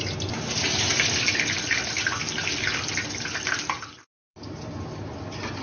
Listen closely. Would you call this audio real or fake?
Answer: real